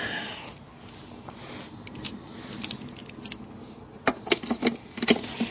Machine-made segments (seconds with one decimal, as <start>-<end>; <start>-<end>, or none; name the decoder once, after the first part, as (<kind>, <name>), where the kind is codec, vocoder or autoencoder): none